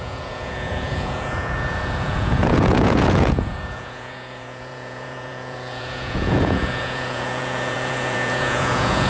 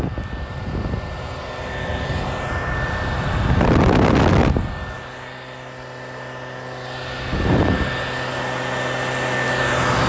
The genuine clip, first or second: second